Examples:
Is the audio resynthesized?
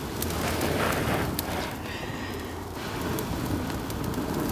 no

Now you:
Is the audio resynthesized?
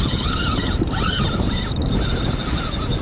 yes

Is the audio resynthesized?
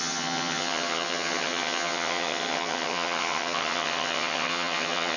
yes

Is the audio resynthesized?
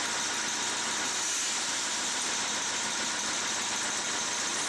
no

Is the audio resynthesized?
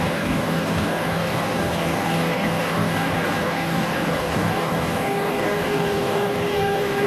yes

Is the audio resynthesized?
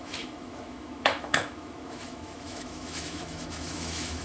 yes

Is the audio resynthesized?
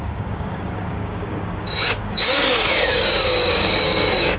yes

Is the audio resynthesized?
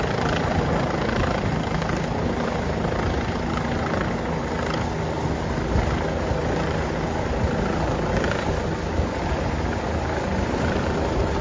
no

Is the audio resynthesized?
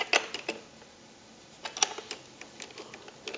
no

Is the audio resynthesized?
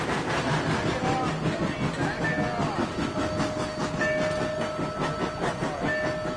no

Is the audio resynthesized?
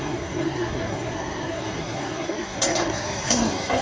yes